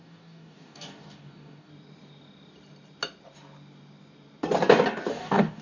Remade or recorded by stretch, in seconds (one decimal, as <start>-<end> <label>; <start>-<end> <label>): 0.0-1.7 remade; 1.7-5.1 recorded; 5.1-5.6 remade